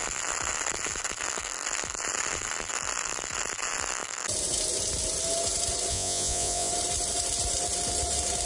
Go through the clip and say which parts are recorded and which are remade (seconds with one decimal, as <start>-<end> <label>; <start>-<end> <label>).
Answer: 0.0-5.9 recorded; 5.9-6.7 remade; 6.7-8.5 recorded